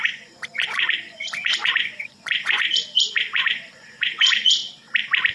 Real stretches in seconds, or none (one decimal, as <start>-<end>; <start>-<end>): 4.6-5.3